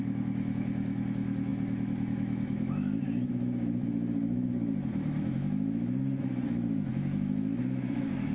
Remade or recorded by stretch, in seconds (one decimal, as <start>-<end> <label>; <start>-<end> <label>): 0.0-8.3 remade